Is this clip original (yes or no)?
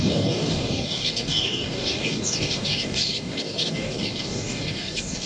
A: no